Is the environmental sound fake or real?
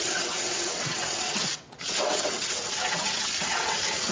fake